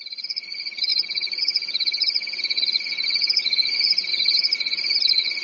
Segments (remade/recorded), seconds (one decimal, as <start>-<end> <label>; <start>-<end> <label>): 0.0-5.4 remade